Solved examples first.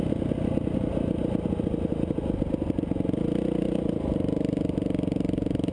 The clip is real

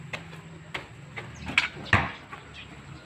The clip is real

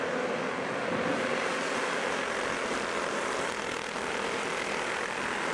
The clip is real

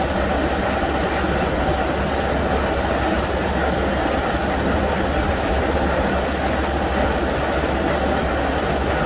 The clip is real